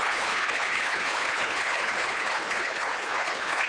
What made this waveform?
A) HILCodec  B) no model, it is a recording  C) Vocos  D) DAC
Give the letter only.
A